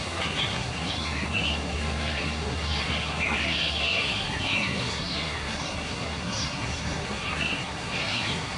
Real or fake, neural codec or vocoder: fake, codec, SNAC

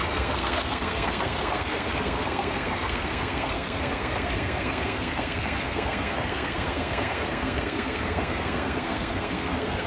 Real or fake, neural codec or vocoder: fake, codec, SNAC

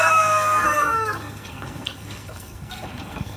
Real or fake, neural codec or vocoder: fake, codec, SNAC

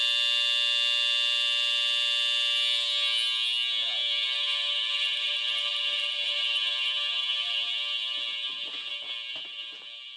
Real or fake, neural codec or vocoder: real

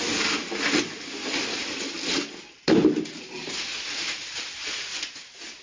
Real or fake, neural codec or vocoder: real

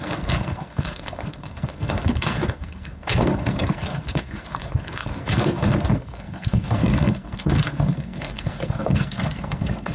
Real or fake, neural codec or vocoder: fake, codec, SNAC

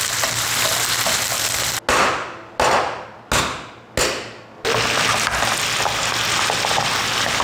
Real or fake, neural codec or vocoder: real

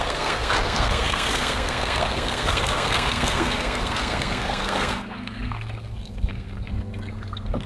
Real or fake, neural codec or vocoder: fake, codec, SNAC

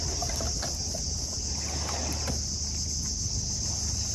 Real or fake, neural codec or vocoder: real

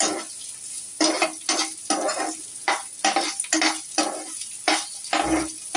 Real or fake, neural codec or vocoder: real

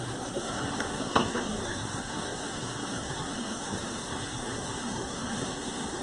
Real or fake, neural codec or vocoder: fake, codec, SNAC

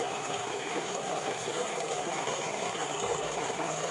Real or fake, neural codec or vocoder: fake, codec, SNAC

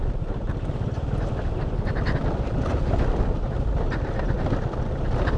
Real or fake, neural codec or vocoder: real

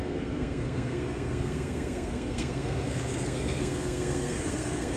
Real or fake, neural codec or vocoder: fake, codec, SNAC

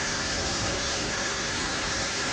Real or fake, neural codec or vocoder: fake, codec, SNAC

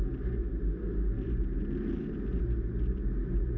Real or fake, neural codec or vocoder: real